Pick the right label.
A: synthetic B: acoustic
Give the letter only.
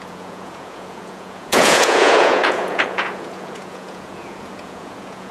A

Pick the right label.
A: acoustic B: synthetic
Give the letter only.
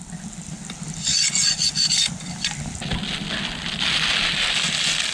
A